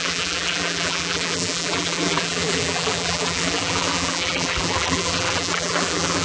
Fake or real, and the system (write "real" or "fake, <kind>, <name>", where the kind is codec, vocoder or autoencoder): fake, vocoder, BigVGAN v2